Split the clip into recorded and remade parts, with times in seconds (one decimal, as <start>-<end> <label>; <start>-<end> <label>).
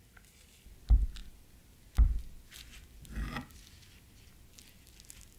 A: 0.0-5.4 recorded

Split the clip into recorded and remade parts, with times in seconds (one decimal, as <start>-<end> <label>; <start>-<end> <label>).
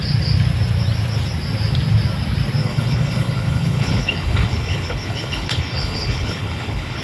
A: 0.0-2.6 recorded; 2.6-7.0 remade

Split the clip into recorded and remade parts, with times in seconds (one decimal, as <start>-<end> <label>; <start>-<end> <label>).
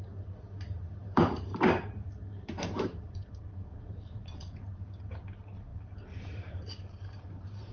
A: 0.0-1.0 recorded; 1.0-4.5 remade; 4.5-5.7 recorded; 5.7-7.7 remade